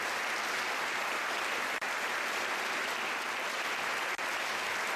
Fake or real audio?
real